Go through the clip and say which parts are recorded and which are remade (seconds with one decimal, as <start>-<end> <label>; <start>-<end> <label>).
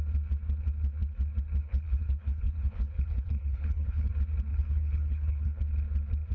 0.0-1.6 recorded; 1.6-4.1 remade; 4.1-4.5 recorded; 4.5-5.6 remade; 5.6-6.3 recorded